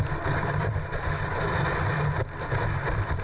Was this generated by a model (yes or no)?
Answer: no